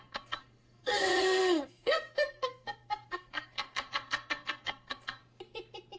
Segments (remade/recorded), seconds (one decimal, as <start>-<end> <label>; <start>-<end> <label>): 0.0-5.2 remade; 5.2-6.0 recorded